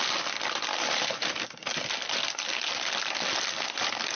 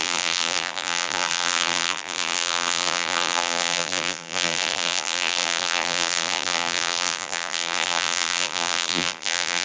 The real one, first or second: first